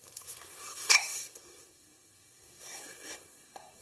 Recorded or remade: remade